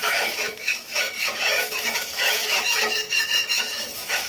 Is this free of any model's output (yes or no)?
no